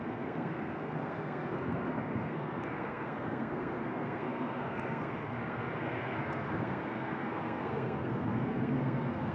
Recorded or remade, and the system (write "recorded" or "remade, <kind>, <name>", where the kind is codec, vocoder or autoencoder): remade, codec, SNAC